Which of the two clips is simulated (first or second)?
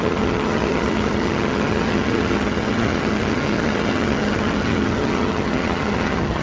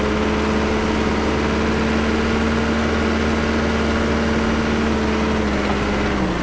first